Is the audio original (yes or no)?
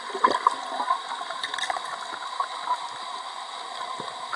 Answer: yes